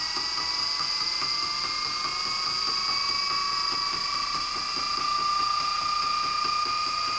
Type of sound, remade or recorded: recorded